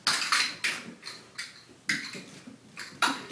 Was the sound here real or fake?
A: real